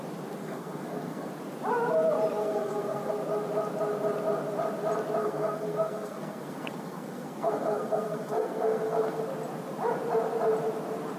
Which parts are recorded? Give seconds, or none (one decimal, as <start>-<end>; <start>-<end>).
0.0-0.4; 1.3-2.4; 3.1-5.2; 9.2-11.2